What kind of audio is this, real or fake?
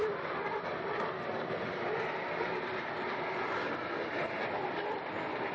real